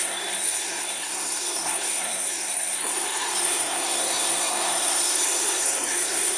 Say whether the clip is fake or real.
fake